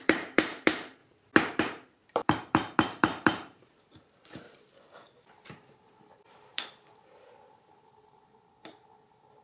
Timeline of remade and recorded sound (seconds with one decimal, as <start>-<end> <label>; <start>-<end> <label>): 0.0-1.0 remade; 1.0-1.6 recorded; 1.6-9.4 remade